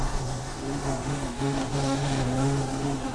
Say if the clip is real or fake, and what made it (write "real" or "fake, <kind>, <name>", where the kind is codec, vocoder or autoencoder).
fake, autoencoder, DAC-VAE